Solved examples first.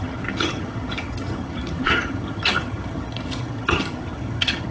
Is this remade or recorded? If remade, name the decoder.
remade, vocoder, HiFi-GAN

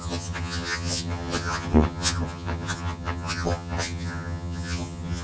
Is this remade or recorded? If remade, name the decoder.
remade, vocoder, HiFi-GAN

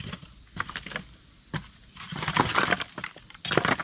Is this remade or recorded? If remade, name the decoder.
recorded